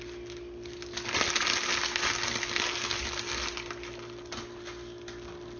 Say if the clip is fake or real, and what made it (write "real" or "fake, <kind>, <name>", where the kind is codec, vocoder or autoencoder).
real